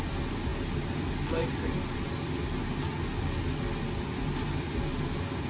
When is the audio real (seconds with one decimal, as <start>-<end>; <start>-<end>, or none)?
0.0-5.5